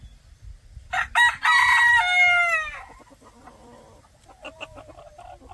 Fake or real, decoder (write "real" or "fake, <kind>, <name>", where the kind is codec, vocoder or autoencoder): real